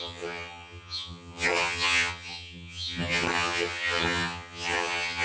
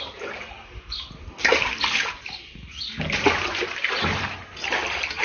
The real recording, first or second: second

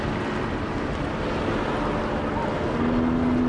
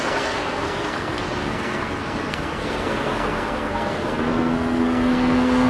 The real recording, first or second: first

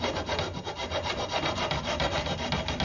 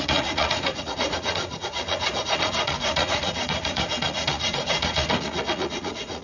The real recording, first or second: first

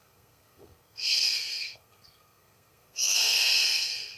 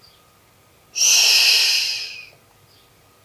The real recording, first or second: second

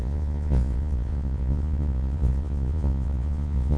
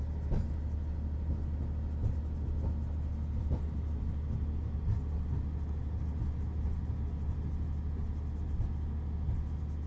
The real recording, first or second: second